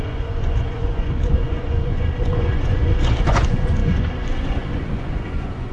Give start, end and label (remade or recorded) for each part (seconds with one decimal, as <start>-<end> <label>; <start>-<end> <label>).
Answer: 0.0-5.7 remade